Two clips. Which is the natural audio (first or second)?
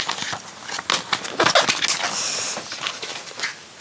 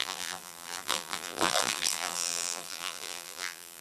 first